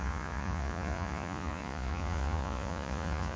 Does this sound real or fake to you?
fake